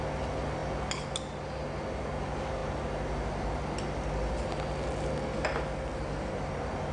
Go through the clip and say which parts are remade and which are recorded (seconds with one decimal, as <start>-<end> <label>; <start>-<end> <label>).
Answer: 0.0-6.9 recorded

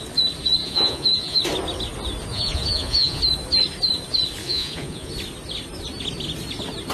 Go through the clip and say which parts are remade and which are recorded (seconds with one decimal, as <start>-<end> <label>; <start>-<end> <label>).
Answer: 0.0-0.6 recorded; 0.6-1.4 remade; 1.4-2.3 recorded; 2.3-3.2 remade; 3.2-4.4 recorded; 4.4-5.1 remade; 5.1-6.9 recorded

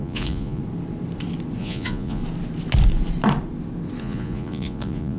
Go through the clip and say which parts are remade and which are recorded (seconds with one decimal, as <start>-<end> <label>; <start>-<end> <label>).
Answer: 0.0-0.6 remade; 0.6-1.6 recorded; 1.6-2.2 remade; 2.2-4.0 recorded; 4.0-5.2 remade

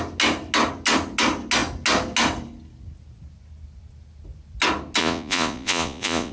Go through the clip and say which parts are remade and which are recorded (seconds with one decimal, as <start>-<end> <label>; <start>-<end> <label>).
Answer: 0.0-5.0 recorded; 5.0-6.3 remade

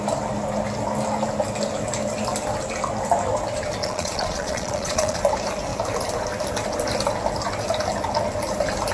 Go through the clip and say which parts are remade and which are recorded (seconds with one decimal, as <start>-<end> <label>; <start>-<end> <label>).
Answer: 0.0-3.8 recorded; 3.8-5.2 remade; 5.2-8.9 recorded

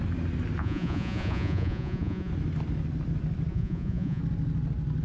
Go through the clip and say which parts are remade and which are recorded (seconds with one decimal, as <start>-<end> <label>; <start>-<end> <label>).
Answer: 0.0-0.6 recorded; 0.6-2.3 remade; 2.3-3.5 recorded; 3.5-4.2 remade; 4.2-5.0 recorded

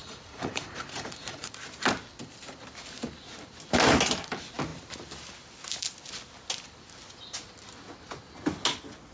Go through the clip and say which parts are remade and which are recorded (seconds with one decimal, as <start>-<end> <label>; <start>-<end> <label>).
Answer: 0.0-1.5 remade; 1.5-9.1 recorded

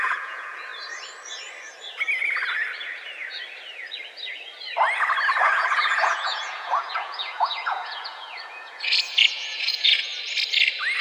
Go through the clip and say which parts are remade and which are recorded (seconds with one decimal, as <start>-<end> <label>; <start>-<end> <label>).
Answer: 0.0-0.7 remade; 0.7-5.4 recorded; 5.4-10.1 remade; 10.1-11.0 recorded